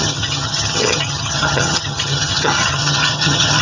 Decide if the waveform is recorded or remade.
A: remade